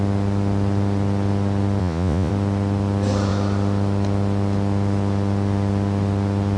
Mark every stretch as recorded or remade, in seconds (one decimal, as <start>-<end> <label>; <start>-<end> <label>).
0.0-1.8 recorded; 1.8-2.3 remade; 2.3-6.6 recorded